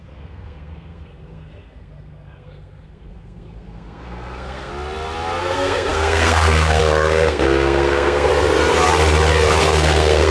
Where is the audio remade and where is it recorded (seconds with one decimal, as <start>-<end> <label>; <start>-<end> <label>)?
0.0-4.7 remade; 4.7-5.4 recorded; 5.4-8.3 remade; 8.3-9.6 recorded; 9.6-10.3 remade